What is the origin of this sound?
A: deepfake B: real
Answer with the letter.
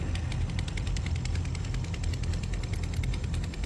B